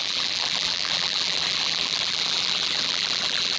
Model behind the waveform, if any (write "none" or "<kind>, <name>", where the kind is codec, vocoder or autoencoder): vocoder, BigVGAN v2